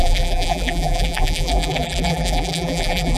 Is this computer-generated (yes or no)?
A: yes